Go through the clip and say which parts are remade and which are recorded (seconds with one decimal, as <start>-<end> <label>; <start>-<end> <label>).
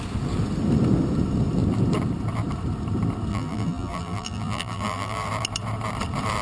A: 0.0-3.3 recorded; 3.3-5.3 remade; 5.3-6.4 recorded